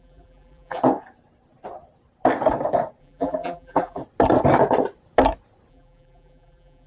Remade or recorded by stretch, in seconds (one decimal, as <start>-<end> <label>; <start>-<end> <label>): 0.0-0.8 remade; 0.8-3.0 recorded; 3.0-4.0 remade; 4.0-5.7 recorded; 5.7-6.9 remade